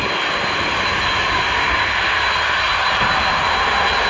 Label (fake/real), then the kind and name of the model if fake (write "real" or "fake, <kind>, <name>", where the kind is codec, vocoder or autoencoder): real